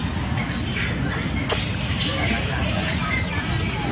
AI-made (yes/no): no